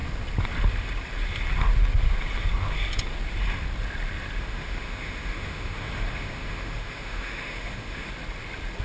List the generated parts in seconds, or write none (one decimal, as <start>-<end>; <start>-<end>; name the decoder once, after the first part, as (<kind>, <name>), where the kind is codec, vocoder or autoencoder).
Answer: 4.4-8.1 (autoencoder, DAC-VAE)